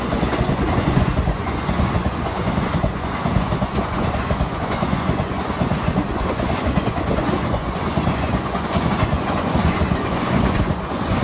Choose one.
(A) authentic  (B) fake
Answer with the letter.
B